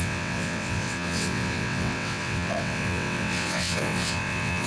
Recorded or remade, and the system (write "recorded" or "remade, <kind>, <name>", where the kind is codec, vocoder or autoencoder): remade, vocoder, WaveNeXt